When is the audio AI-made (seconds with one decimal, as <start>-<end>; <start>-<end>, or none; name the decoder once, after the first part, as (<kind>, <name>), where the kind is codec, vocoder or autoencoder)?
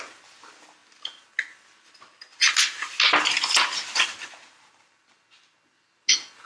none